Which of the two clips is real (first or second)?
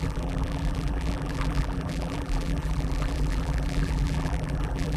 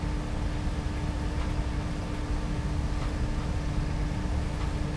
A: second